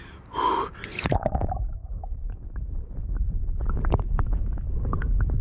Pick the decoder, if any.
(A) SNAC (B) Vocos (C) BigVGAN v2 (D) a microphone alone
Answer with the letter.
C